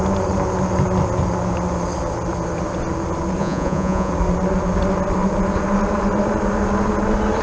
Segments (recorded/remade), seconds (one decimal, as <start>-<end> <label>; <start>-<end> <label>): 0.0-3.4 recorded; 3.4-4.1 remade; 4.1-7.4 recorded